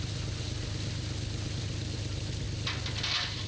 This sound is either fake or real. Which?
real